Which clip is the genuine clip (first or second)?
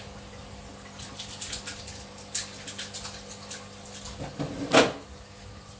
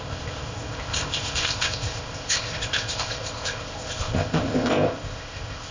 first